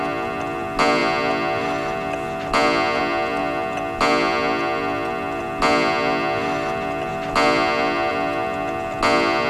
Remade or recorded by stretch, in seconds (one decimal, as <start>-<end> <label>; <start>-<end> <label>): 0.0-9.5 recorded